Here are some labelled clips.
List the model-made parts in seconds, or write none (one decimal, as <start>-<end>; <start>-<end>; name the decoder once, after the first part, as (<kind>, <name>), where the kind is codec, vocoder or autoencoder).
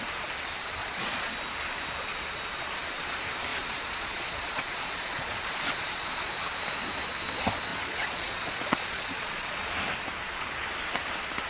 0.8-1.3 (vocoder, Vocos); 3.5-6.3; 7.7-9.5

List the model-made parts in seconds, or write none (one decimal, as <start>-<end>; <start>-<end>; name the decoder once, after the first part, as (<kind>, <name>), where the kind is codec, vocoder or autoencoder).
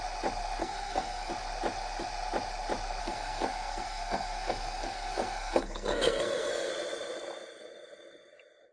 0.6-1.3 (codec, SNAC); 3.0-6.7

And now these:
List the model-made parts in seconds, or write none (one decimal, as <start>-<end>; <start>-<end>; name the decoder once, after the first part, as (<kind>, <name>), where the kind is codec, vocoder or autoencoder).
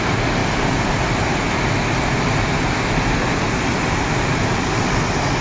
none